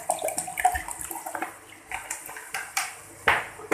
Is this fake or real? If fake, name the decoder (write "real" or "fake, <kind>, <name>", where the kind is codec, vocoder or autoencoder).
real